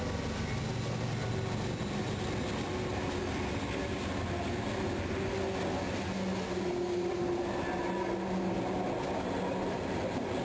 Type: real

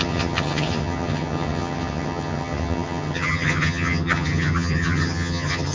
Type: fake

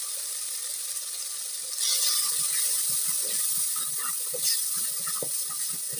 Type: real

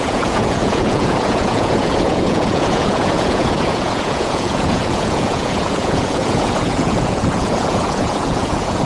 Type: fake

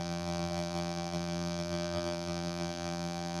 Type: fake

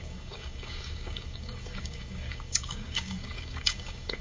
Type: fake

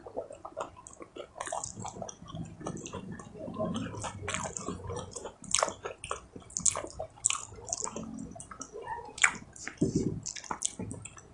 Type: real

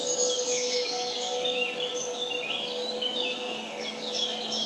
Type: fake